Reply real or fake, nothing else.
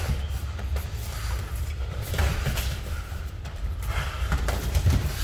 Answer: fake